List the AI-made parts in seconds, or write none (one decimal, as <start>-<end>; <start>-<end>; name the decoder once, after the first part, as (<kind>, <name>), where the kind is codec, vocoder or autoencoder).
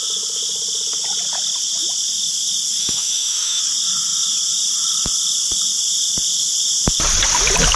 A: 2.8-3.6 (autoencoder, DAC-VAE)